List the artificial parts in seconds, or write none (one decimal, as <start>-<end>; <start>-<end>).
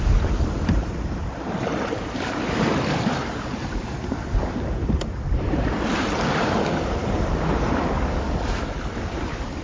0.0-1.2; 3.7-7.0; 9.2-9.6